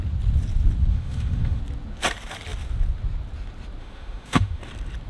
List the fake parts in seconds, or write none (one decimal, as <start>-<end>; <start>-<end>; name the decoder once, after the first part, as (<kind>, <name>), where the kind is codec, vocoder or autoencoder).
0.9-1.6 (autoencoder, DAC-VAE); 3.8-4.6